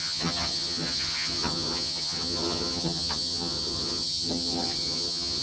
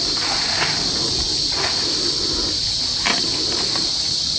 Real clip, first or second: second